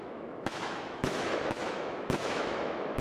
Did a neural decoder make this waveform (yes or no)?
yes